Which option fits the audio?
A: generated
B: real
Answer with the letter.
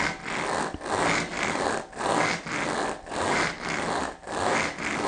B